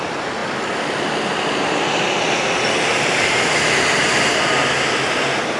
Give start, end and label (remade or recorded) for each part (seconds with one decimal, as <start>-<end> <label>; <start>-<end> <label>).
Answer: 0.0-5.6 recorded